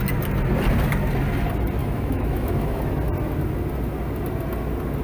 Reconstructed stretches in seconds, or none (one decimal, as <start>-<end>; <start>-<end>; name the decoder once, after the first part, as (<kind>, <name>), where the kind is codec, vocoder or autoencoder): 1.8-2.8 (autoencoder, DAC-VAE)